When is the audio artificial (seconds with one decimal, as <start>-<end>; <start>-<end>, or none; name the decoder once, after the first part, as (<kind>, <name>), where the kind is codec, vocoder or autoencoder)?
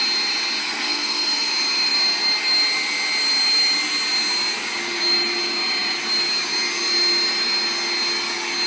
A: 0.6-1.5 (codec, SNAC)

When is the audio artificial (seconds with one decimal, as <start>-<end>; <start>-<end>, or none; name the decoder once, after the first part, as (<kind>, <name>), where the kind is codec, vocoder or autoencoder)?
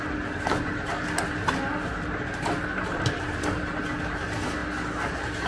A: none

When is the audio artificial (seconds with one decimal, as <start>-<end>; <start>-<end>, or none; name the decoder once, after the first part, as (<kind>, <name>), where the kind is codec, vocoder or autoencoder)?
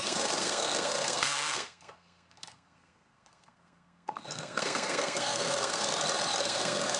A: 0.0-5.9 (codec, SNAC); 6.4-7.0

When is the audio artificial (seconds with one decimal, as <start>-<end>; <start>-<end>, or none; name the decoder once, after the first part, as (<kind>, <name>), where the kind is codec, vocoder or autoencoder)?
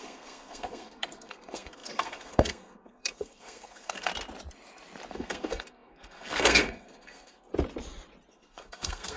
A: 0.0-4.1 (codec, SNAC); 5.1-7.5; 8.3-9.2